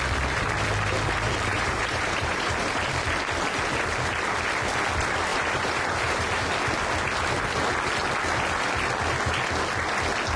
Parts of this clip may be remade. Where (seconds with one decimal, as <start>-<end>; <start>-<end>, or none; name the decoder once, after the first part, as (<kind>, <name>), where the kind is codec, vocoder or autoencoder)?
1.5-2.8 (vocoder, BigVGAN v2); 5.3-6.3